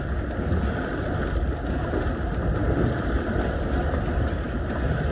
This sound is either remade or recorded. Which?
recorded